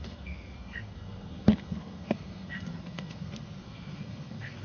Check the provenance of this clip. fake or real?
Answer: fake